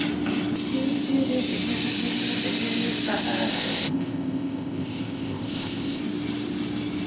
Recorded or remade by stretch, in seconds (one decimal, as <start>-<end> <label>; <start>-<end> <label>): 0.0-3.5 recorded; 3.5-6.0 remade; 6.0-7.1 recorded